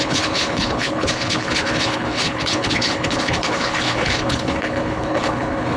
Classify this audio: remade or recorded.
remade